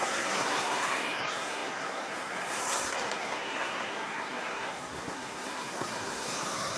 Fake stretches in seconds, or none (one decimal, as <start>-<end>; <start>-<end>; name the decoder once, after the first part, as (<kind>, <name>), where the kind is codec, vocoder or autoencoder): 0.0-6.8 (codec, SNAC)